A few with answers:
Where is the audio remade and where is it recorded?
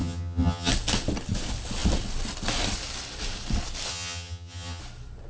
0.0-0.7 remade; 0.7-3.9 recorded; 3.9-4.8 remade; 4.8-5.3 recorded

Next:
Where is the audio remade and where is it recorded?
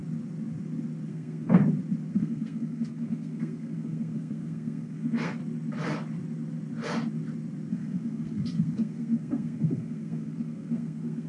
0.0-1.1 recorded; 1.1-1.6 remade; 1.6-2.1 recorded; 2.1-5.4 remade; 5.4-7.7 recorded; 7.7-11.3 remade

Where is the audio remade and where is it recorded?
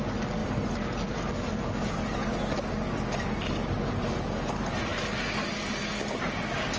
0.0-0.4 recorded; 0.4-1.3 remade; 1.3-6.8 recorded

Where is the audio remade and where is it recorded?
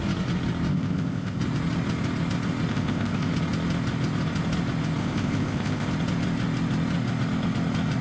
0.0-0.7 recorded; 0.7-1.4 remade; 1.4-2.7 recorded; 2.7-3.3 remade; 3.3-5.0 recorded; 5.0-5.9 remade; 5.9-8.0 recorded